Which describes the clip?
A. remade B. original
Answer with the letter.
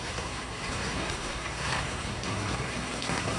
A